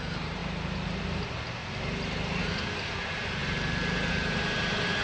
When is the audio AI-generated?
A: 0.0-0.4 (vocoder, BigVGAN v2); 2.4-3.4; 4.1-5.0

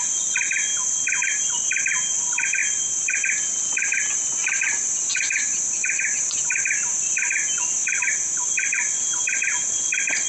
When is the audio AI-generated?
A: 7.8-9.8 (vocoder, BigVGAN v2)